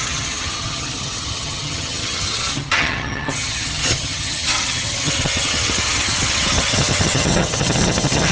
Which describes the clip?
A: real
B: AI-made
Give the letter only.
B